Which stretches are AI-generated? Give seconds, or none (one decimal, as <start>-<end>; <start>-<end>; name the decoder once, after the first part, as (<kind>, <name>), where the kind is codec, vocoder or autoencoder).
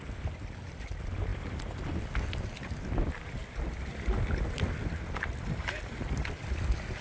none